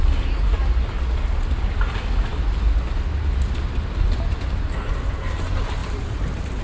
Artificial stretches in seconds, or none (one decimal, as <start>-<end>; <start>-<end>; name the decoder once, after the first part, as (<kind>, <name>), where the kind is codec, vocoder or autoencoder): 5.8-6.6 (vocoder, BigVGAN v2)